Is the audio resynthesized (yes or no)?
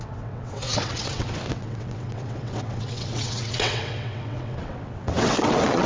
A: yes